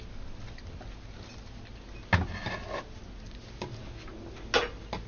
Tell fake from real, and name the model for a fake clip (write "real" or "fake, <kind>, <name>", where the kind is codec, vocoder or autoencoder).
real